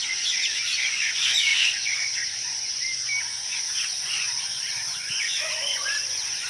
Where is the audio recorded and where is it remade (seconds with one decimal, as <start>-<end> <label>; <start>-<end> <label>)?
0.0-6.5 remade